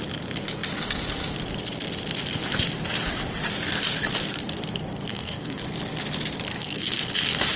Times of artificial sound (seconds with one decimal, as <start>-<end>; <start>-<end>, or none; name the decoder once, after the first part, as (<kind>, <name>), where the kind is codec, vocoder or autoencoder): 5.1-5.6 (codec, SNAC); 6.5-7.1

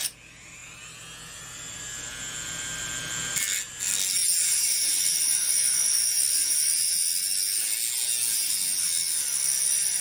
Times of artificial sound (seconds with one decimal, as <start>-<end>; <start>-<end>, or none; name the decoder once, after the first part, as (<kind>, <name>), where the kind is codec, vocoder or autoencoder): none

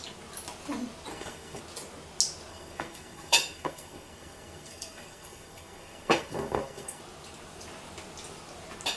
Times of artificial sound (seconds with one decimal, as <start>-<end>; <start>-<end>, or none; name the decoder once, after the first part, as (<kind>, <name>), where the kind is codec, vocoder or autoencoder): 1.1-1.6 (codec, SNAC); 2.5-7.0